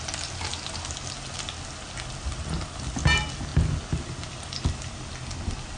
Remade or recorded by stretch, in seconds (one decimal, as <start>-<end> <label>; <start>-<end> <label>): 0.0-5.8 recorded